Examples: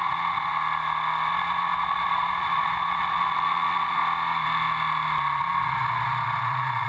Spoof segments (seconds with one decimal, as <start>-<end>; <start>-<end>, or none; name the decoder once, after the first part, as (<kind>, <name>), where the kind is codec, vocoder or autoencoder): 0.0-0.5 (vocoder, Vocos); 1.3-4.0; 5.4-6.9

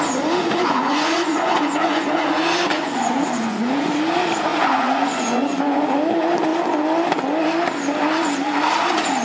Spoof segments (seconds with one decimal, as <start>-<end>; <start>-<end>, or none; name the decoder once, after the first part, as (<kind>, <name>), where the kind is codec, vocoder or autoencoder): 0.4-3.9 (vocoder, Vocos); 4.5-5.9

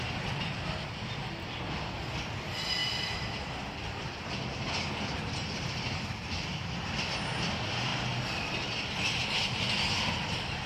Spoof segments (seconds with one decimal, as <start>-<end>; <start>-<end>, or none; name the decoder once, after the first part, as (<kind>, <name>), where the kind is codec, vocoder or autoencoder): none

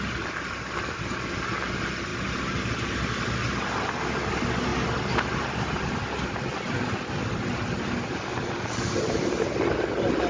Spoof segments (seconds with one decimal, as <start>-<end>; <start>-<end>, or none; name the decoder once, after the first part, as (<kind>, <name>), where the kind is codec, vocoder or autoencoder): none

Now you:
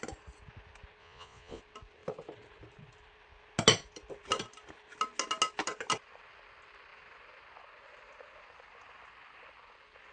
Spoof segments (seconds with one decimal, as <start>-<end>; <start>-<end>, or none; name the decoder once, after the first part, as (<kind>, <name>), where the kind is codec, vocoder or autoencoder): 1.0-1.6 (vocoder, Vocos)

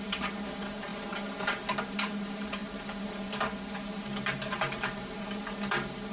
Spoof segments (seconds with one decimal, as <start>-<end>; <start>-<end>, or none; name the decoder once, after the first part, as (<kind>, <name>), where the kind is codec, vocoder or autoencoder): none

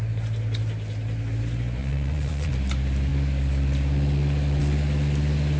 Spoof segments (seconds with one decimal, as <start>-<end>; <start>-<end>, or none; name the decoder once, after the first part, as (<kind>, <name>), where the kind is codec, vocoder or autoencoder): 1.8-2.5 (vocoder, Vocos)